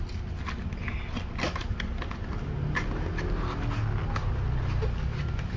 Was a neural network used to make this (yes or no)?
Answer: no